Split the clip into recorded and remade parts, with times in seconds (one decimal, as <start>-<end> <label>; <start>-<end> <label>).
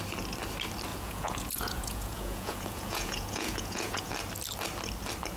0.0-0.9 recorded; 0.9-4.1 remade; 4.1-5.4 recorded